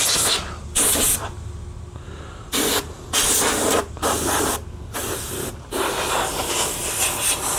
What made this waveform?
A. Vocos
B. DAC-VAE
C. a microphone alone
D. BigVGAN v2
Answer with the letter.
C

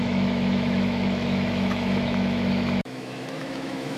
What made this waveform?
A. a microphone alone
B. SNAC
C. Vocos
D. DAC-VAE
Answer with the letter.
D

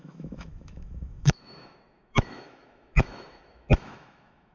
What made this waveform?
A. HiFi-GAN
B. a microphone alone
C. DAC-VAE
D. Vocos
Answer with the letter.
C